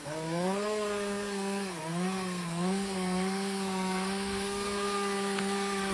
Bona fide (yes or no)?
no